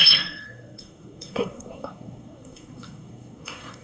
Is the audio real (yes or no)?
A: no